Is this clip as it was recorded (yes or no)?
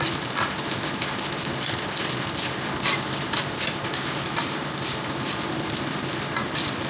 yes